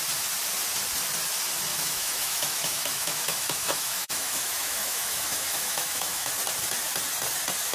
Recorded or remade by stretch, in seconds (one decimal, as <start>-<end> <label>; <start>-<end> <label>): 0.0-1.7 recorded; 1.7-6.3 remade; 6.3-7.7 recorded